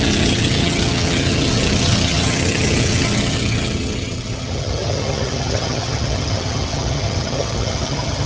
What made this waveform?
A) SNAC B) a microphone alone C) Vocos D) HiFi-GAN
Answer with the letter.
D